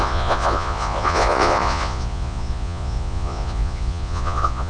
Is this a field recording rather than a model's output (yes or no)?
no